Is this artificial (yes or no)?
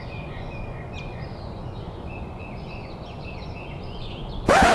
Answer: yes